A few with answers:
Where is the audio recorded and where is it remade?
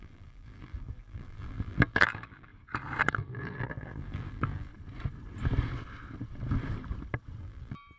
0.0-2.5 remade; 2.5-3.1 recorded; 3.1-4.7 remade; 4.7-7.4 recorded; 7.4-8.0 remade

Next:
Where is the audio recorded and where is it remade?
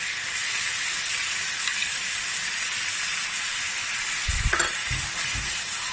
0.0-3.1 recorded; 3.1-4.6 remade; 4.6-5.9 recorded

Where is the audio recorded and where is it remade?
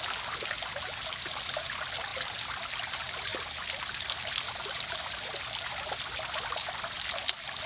0.0-2.1 recorded; 2.1-2.7 remade; 2.7-3.3 recorded; 3.3-5.0 remade; 5.0-7.7 recorded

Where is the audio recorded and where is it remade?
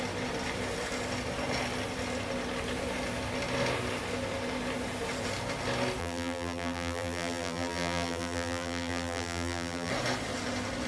0.0-6.0 recorded; 6.0-9.9 remade; 9.9-10.9 recorded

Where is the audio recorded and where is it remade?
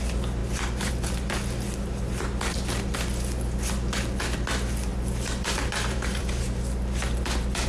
0.0-4.9 recorded; 4.9-6.4 remade; 6.4-7.7 recorded